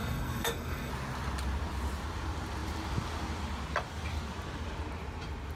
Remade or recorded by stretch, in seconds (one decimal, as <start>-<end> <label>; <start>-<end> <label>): 0.0-0.9 remade; 0.9-5.6 recorded